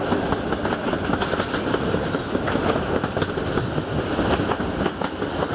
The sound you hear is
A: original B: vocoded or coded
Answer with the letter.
A